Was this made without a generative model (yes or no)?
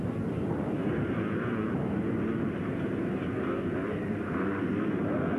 no